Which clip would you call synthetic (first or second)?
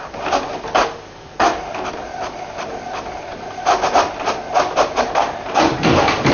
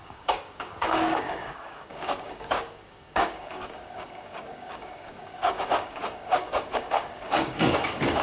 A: second